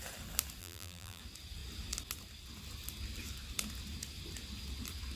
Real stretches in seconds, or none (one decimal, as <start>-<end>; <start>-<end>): 0.0-0.6; 1.2-5.2